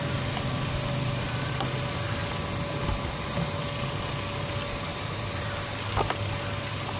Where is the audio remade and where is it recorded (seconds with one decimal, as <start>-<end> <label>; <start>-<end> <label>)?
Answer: 0.0-4.9 recorded; 4.9-5.6 remade; 5.6-7.0 recorded